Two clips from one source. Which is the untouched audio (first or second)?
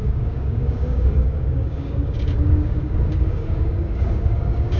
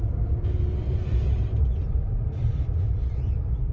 second